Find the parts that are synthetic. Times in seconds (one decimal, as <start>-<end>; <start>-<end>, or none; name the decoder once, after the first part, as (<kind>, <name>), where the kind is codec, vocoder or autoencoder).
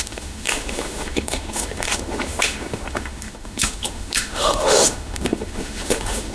0.0-6.3 (autoencoder, DAC-VAE)